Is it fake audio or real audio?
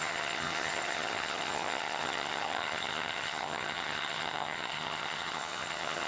fake